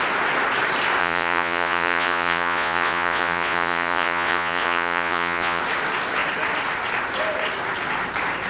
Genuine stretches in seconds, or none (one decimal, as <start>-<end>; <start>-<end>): 0.0-1.0; 5.6-8.5